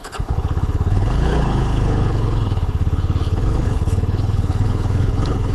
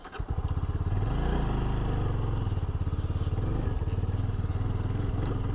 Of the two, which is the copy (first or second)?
first